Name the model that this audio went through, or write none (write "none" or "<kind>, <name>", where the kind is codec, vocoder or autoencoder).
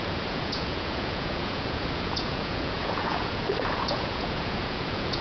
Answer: vocoder, Vocos